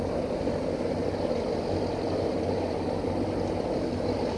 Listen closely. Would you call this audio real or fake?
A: real